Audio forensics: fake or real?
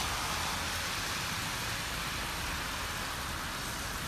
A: real